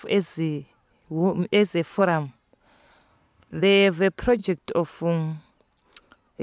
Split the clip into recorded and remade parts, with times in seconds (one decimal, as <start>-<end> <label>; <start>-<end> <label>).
0.0-3.1 recorded; 3.1-3.6 remade; 3.6-6.4 recorded